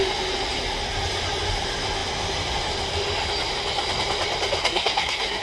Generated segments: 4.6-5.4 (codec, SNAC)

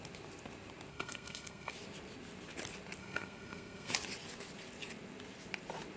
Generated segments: 0.9-1.7 (codec, SNAC); 3.0-3.9

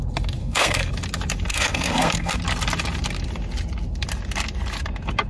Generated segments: 0.4-0.9 (codec, SNAC); 1.5-2.4

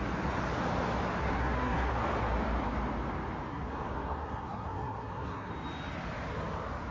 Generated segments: 1.2-1.9 (codec, SNAC); 3.5-5.5

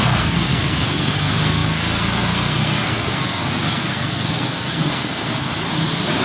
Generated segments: 0.0-5.5 (codec, SNAC)

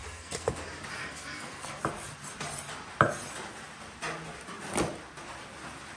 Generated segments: 0.0-0.6 (codec, SNAC); 1.0-1.8

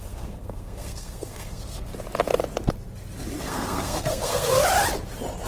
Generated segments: 0.0-1.9 (codec, SNAC); 3.4-4.6